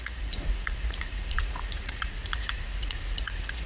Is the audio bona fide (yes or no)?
no